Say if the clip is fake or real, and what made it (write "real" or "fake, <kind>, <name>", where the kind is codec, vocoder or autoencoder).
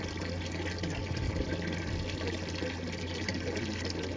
real